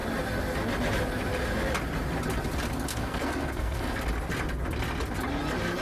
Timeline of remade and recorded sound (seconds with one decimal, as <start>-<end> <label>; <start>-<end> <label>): 0.0-2.9 recorded; 2.9-4.0 remade; 4.0-5.8 recorded